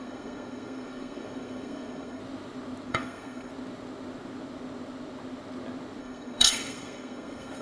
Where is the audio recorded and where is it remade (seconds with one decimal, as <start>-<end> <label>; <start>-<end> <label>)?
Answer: 0.0-2.2 remade; 2.2-2.9 recorded; 2.9-3.5 remade; 3.5-6.0 recorded; 6.0-7.6 remade

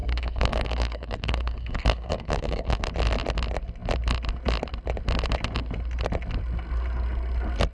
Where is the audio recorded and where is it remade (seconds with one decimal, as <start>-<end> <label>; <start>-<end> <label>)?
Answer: 0.0-2.9 remade; 2.9-7.7 recorded

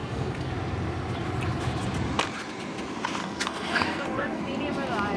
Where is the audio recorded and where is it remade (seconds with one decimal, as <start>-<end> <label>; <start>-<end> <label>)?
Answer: 0.0-0.5 remade; 0.5-3.2 recorded; 3.2-4.4 remade; 4.4-5.2 recorded

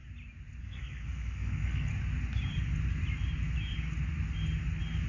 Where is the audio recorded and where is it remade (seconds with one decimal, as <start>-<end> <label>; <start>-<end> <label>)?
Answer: 0.0-0.6 recorded; 0.6-1.9 remade; 1.9-5.1 recorded

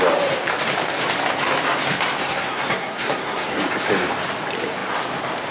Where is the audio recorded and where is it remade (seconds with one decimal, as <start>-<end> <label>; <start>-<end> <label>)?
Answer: 0.0-2.2 recorded; 2.2-3.6 remade; 3.6-5.5 recorded

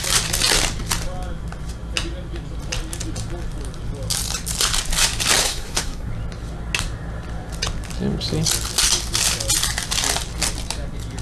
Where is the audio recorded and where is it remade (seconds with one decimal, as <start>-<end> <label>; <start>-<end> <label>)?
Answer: 0.0-5.4 recorded; 5.4-6.1 remade; 6.1-11.2 recorded

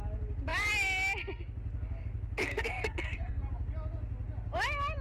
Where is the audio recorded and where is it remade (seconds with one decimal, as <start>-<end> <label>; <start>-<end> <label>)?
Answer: 0.0-2.4 recorded; 2.4-3.4 remade; 3.4-5.0 recorded